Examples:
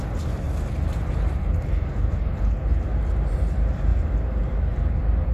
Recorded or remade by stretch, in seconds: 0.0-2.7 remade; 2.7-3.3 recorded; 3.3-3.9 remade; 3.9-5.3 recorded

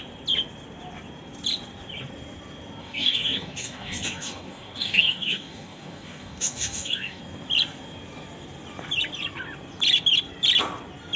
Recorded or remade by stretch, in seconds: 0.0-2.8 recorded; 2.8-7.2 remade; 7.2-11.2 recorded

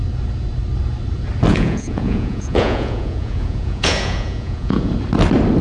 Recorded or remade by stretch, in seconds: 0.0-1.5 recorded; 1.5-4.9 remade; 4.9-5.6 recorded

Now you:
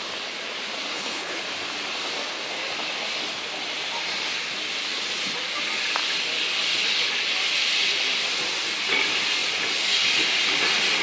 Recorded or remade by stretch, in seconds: 0.0-0.9 recorded; 0.9-1.4 remade; 1.4-11.0 recorded

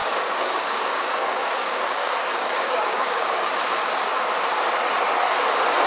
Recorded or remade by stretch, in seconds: 0.0-3.5 remade; 3.5-5.9 recorded

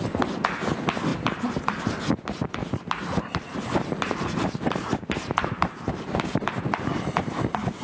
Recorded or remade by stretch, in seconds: 0.0-1.1 recorded; 1.1-1.8 remade; 1.8-2.6 recorded; 2.6-7.3 remade; 7.3-7.8 recorded

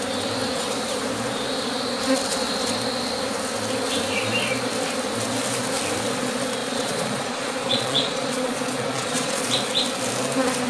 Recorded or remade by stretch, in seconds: 0.0-6.6 recorded; 6.6-9.5 remade; 9.5-10.7 recorded

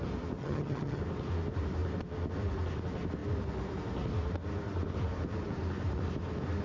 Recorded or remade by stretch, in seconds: 0.0-0.4 recorded; 0.4-1.0 remade; 1.0-6.6 recorded